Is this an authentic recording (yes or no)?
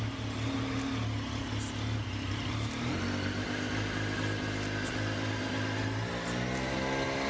yes